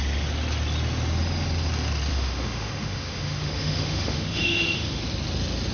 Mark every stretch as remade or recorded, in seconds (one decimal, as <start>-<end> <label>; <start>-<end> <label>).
0.0-2.1 recorded; 2.1-5.0 remade; 5.0-5.7 recorded